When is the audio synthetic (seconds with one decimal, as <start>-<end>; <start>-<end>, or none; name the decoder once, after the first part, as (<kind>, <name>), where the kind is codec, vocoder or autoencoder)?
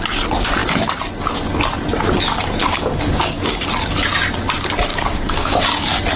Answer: 2.6-3.6 (codec, DAC); 4.9-5.6